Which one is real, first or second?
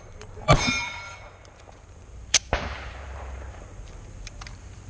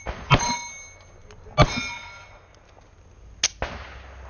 second